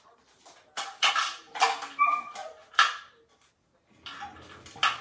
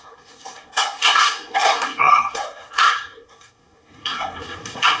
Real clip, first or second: first